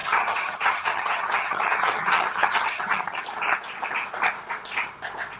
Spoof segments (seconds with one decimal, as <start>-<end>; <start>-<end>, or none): 0.0-3.2